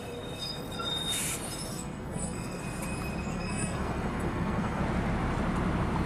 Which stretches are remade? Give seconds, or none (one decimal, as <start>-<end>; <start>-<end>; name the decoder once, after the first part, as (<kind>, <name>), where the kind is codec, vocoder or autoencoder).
1.7-2.6 (codec, SNAC); 3.3-4.8